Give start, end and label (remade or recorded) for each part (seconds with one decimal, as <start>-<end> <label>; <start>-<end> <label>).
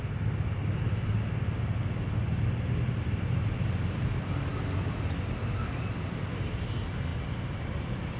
0.0-7.1 recorded; 7.1-8.2 remade